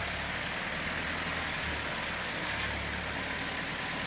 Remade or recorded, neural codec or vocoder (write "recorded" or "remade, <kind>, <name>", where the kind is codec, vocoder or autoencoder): recorded